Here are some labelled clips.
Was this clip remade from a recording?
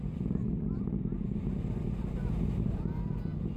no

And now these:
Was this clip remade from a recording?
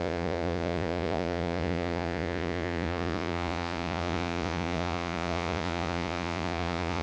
yes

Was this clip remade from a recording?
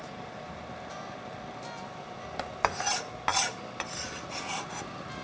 no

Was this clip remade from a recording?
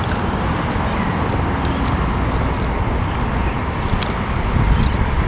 no